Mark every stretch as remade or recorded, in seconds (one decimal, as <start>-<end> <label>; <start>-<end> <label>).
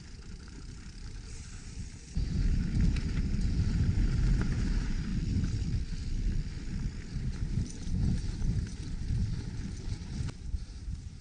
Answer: 0.0-5.1 remade; 5.1-7.2 recorded; 7.2-10.0 remade; 10.0-10.6 recorded; 10.6-11.2 remade